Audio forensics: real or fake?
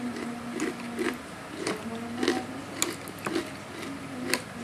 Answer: real